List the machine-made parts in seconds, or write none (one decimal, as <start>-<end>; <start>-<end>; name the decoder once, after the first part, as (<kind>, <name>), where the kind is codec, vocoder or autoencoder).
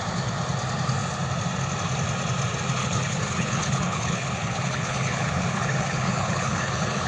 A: 2.8-7.1 (codec, HILCodec)